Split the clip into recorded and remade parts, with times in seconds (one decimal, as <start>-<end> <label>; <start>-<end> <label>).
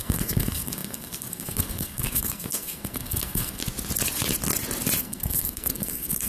0.0-3.6 remade; 3.6-5.0 recorded; 5.0-6.3 remade